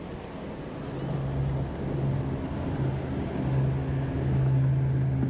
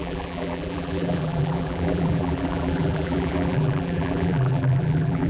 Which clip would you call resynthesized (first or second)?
second